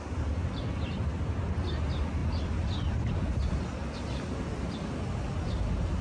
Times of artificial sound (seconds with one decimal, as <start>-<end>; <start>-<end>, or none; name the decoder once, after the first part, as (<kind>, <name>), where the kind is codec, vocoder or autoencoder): none